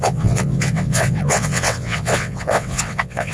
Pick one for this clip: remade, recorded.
remade